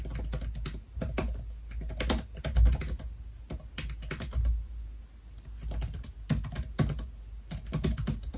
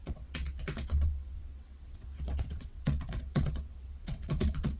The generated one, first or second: second